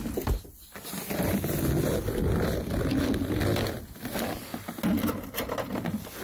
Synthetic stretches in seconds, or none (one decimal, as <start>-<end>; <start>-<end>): none